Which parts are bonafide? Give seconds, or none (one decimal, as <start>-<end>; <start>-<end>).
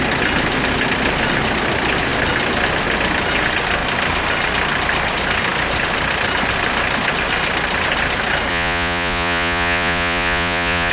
0.0-8.5